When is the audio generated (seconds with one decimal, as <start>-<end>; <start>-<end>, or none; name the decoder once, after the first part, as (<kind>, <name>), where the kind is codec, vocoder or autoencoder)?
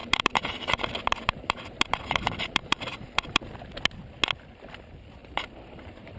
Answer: 0.0-3.4 (vocoder, BigVGAN v2); 5.2-6.2